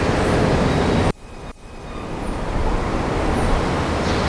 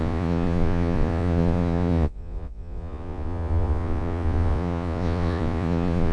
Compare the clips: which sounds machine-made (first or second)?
second